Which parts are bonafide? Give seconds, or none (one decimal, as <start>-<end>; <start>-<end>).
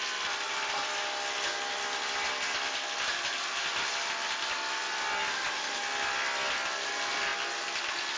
0.0-8.2